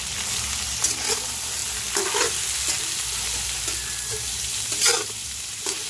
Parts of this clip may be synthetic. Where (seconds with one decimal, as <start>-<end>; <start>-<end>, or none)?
none